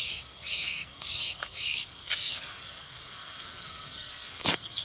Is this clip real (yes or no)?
no